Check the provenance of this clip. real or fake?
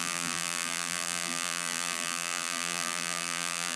fake